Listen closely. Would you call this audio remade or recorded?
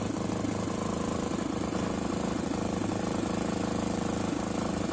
recorded